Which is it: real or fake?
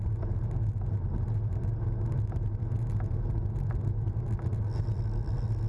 real